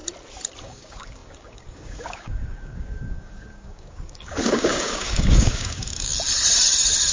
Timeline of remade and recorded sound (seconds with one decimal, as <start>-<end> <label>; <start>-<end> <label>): 0.0-0.6 recorded; 0.6-6.1 remade; 6.1-7.1 recorded